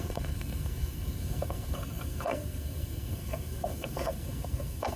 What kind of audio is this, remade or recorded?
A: remade